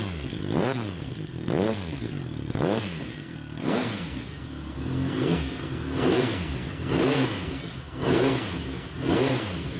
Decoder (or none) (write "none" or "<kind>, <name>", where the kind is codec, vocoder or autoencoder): codec, SNAC